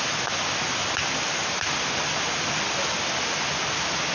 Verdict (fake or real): real